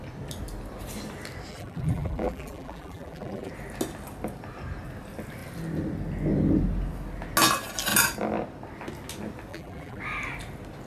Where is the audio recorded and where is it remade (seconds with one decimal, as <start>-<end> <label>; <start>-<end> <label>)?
0.0-1.5 recorded; 1.5-3.5 remade; 3.5-9.5 recorded; 9.5-10.0 remade; 10.0-10.9 recorded